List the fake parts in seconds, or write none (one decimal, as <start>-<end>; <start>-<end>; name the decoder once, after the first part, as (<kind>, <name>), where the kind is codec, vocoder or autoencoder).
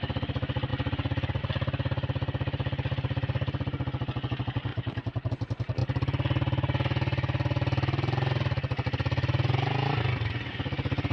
4.7-5.3 (vocoder, BigVGAN v2)